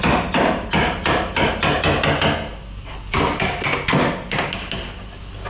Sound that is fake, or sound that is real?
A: real